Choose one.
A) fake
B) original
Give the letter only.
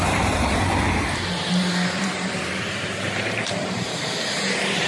A